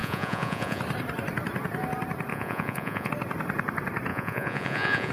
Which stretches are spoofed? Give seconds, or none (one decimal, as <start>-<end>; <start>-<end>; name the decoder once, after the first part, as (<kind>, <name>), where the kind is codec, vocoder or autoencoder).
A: 0.0-0.8 (vocoder, Vocos); 2.3-3.1; 4.1-5.1